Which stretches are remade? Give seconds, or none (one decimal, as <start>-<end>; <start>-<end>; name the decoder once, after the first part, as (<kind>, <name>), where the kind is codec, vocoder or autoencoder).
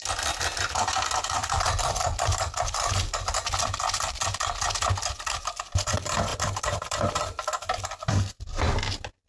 1.4-4.3 (vocoder, BigVGAN v2); 6.3-7.7